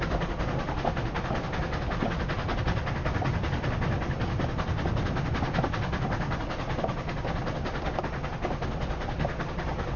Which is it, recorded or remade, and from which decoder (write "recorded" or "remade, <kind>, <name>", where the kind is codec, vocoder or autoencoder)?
recorded